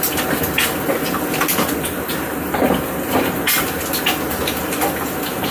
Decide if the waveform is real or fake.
real